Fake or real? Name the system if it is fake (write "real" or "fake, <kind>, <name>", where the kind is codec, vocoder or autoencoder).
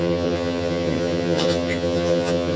fake, vocoder, HiFi-GAN